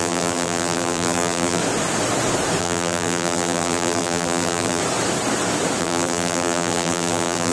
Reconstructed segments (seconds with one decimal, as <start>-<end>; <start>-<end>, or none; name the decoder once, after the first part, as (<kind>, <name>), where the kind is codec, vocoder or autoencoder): 0.0-1.6 (vocoder, BigVGAN v2); 2.6-4.8; 5.8-7.5

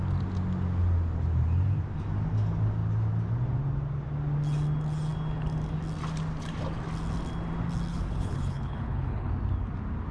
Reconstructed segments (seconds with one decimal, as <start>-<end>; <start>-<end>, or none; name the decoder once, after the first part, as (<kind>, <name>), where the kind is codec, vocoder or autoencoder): 7.9-9.3 (codec, HILCodec)